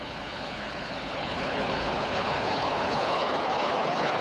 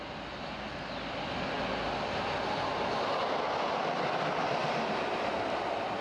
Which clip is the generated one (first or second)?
first